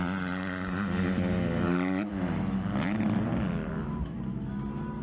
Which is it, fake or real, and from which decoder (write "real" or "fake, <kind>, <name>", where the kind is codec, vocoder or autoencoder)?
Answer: real